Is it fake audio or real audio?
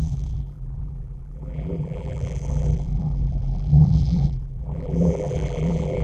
fake